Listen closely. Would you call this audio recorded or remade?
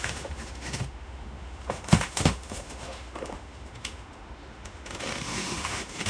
remade